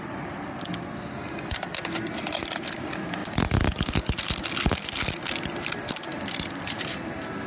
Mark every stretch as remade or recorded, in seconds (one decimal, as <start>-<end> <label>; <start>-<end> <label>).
0.0-7.5 recorded